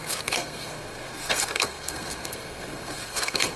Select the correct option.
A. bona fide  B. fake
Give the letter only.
B